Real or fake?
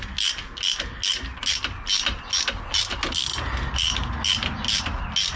real